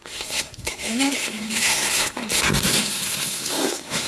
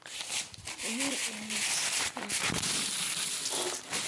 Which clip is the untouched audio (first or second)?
second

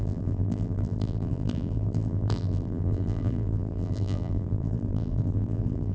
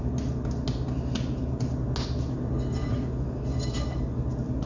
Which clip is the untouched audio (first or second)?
second